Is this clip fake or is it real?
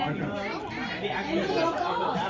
real